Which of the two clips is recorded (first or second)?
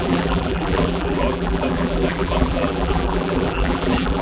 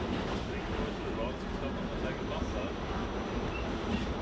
second